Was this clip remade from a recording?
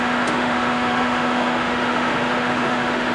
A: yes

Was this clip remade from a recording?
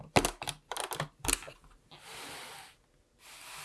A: no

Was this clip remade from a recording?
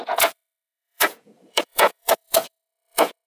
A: yes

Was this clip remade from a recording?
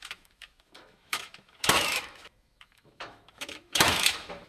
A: yes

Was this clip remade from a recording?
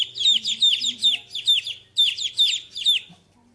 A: no